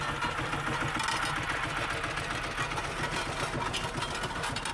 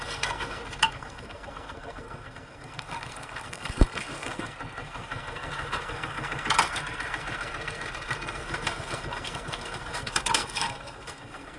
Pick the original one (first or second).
first